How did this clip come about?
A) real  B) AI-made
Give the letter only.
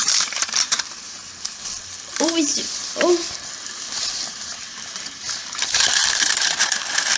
B